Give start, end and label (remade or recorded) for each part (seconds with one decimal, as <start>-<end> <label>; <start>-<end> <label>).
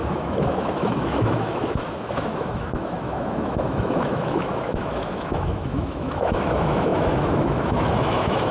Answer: 0.0-8.5 remade